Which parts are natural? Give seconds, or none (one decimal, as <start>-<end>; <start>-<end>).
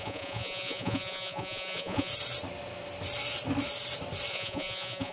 2.1-4.3